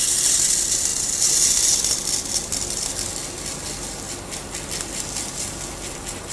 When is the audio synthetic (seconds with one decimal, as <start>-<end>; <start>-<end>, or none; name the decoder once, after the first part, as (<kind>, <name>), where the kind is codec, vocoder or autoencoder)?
none